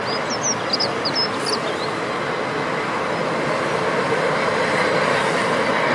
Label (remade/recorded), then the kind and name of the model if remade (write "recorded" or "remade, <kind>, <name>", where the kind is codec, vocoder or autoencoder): recorded